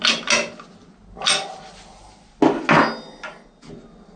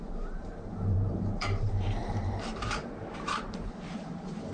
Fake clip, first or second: second